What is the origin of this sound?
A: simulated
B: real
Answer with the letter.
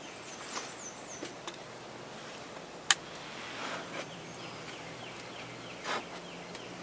B